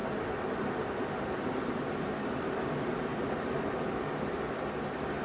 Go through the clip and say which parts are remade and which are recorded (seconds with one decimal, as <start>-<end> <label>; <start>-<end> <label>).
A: 0.0-5.2 recorded

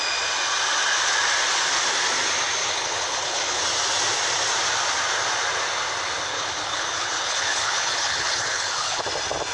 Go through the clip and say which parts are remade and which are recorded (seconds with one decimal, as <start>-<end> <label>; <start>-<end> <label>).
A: 0.0-2.6 recorded; 2.6-3.6 remade; 3.6-6.3 recorded; 6.3-9.0 remade; 9.0-9.5 recorded

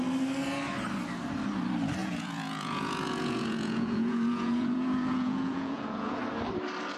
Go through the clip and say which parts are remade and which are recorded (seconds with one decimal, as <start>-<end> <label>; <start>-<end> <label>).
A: 0.0-2.0 recorded; 2.0-6.2 remade; 6.2-7.0 recorded

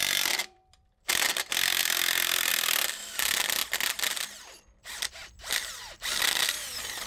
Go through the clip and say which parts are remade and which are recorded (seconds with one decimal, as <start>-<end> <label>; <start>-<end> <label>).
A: 0.0-3.6 remade; 3.6-5.1 recorded; 5.1-7.1 remade

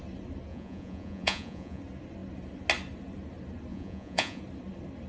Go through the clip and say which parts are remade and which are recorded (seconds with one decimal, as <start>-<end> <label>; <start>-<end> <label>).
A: 0.0-0.5 recorded; 0.5-1.8 remade; 1.8-3.7 recorded; 3.7-4.4 remade; 4.4-5.1 recorded

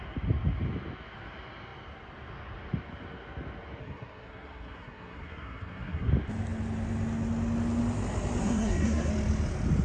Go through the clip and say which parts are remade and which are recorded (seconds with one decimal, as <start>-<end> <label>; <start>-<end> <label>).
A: 0.0-3.8 recorded; 3.8-6.1 remade; 6.1-8.4 recorded; 8.4-9.1 remade; 9.1-9.8 recorded

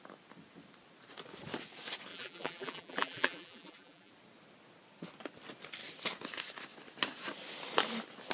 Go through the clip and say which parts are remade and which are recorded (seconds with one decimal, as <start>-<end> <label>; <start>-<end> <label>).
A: 0.0-2.1 recorded; 2.1-4.1 remade; 4.1-8.3 recorded